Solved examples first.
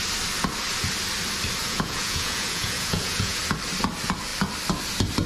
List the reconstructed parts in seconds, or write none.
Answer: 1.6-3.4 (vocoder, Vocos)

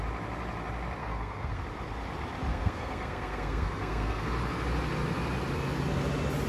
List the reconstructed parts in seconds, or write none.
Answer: 1.0-1.6 (codec, SNAC); 2.5-4.3